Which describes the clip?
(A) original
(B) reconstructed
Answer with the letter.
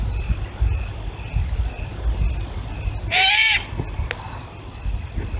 A